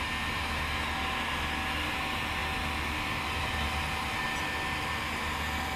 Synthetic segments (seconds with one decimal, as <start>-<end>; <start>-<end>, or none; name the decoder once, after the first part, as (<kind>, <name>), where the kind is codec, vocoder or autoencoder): none